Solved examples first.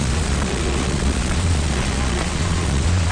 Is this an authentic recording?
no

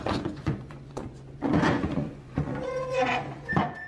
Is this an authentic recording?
no